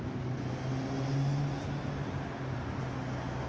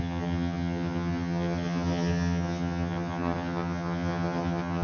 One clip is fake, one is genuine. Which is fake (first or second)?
second